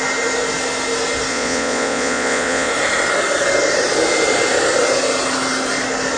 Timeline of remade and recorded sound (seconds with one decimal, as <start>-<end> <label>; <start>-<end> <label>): 0.0-1.3 recorded; 1.3-2.7 remade; 2.7-6.2 recorded